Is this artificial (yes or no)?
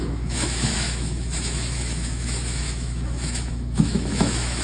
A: yes